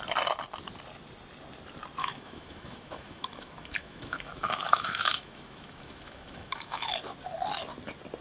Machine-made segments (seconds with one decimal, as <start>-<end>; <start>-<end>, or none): 2.0-6.9